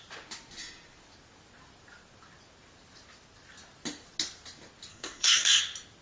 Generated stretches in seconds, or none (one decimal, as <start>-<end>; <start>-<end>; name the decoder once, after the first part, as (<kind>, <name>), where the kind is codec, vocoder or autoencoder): 4.9-5.6 (codec, SNAC)

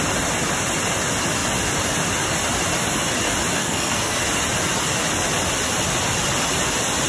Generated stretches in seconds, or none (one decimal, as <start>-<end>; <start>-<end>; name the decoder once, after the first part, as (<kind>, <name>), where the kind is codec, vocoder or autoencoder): 3.6-4.2 (codec, SNAC)

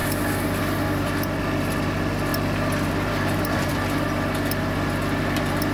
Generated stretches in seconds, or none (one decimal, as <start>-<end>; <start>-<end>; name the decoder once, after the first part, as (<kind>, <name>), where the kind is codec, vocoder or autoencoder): none

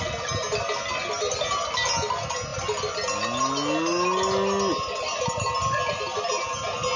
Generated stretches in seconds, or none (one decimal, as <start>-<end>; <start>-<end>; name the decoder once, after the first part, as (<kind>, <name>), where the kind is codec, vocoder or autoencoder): none